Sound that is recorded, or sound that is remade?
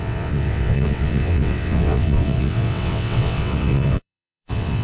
remade